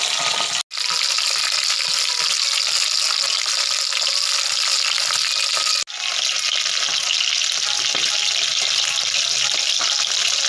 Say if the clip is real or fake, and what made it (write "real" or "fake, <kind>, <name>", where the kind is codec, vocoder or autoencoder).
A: real